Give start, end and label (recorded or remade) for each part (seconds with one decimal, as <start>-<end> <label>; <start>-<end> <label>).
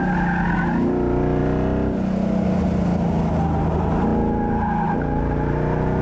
0.0-6.0 recorded